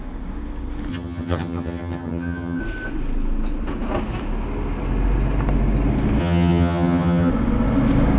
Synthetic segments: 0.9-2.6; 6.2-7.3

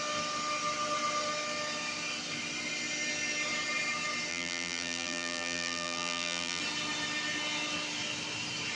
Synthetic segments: 4.3-6.6

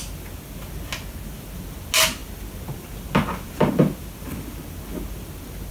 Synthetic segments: none

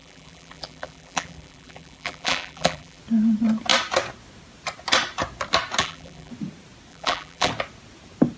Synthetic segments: 0.0-3.0; 5.8-6.3; 6.9-7.5

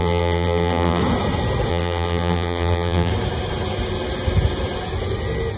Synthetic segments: 0.0-1.0; 1.7-3.1